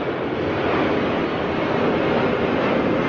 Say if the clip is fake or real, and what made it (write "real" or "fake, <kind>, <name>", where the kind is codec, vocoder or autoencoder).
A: real